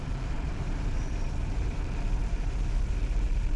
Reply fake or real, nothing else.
fake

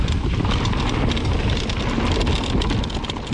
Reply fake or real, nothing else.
real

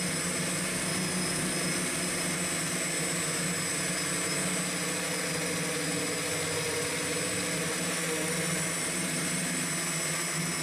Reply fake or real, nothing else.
real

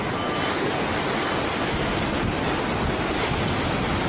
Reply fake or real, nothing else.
real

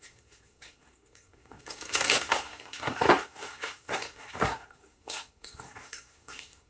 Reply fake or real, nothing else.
fake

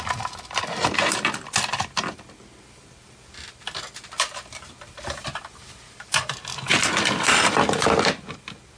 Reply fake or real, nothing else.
real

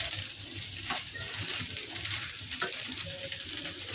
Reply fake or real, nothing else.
real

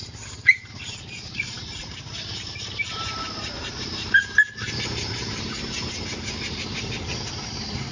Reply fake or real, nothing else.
fake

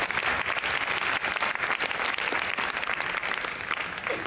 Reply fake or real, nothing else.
real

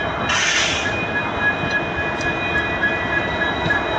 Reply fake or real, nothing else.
real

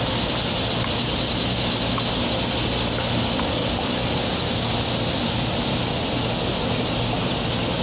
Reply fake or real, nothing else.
real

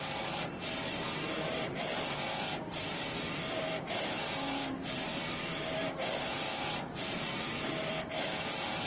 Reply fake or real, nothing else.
fake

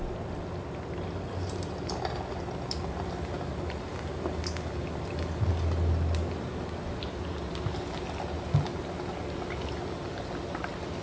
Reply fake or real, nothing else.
real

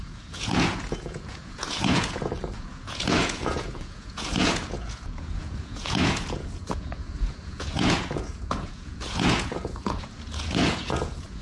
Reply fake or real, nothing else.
fake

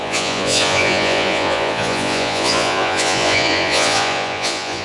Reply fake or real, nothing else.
fake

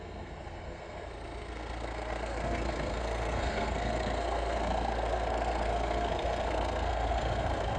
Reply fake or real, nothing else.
fake